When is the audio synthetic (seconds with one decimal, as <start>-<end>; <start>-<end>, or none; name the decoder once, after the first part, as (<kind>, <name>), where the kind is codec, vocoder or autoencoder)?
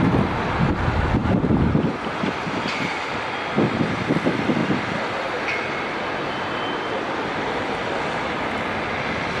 1.2-2.9 (vocoder, BigVGAN v2); 4.6-8.5